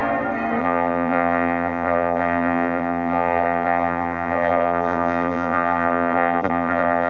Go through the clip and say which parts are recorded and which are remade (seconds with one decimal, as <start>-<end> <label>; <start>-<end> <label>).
0.0-0.6 recorded; 0.6-7.1 remade